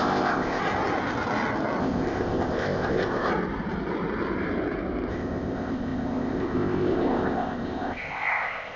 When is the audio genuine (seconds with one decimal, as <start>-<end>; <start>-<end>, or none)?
0.6-1.8; 3.3-5.1